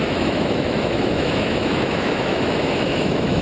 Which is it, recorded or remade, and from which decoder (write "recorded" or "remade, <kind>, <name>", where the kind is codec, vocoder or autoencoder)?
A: remade, autoencoder, DAC-VAE